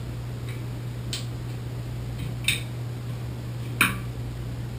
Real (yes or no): yes